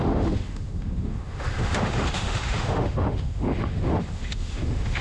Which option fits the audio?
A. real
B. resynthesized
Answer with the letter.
B